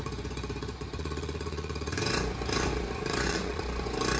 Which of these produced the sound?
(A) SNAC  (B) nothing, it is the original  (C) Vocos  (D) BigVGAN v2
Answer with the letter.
C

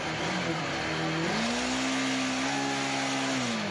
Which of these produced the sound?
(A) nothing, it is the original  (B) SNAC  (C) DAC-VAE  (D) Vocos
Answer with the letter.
A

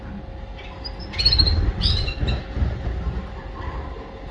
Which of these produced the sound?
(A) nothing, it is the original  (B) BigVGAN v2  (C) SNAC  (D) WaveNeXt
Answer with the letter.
A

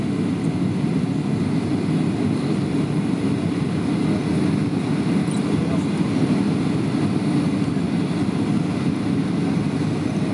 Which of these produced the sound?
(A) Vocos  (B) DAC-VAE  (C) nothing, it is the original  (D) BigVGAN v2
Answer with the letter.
C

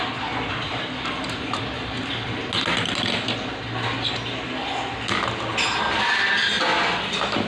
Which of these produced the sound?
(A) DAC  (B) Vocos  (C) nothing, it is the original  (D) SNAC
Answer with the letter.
C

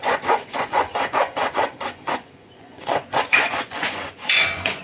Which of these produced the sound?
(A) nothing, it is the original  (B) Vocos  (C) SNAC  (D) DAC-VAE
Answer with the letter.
B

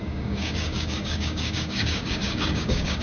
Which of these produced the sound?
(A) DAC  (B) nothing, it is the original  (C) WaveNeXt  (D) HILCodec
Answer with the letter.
A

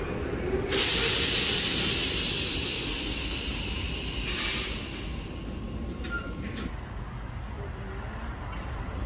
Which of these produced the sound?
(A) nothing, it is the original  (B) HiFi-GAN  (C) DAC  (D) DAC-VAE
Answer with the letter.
A